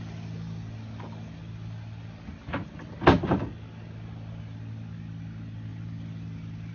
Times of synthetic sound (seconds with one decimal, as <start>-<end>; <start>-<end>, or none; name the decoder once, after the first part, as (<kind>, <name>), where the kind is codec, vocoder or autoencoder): none